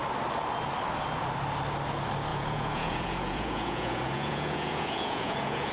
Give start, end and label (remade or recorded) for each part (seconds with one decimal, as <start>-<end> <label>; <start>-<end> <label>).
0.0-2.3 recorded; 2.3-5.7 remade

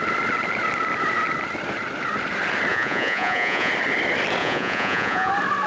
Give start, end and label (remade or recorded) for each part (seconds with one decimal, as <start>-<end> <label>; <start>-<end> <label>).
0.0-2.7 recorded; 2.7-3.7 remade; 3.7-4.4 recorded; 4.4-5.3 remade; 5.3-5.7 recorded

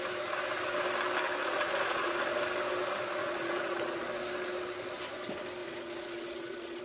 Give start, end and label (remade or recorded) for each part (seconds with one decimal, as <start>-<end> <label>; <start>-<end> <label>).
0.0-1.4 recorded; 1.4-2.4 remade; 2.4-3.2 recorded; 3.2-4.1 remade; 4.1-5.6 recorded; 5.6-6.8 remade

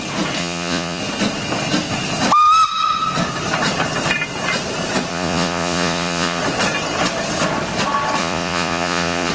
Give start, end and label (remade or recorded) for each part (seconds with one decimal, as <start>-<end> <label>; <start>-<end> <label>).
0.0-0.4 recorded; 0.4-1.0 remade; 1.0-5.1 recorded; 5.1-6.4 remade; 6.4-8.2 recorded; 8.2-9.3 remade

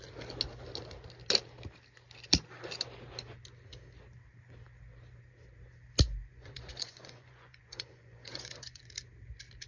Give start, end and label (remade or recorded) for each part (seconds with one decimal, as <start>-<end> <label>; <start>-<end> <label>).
0.0-6.3 recorded; 6.3-8.8 remade; 8.8-9.7 recorded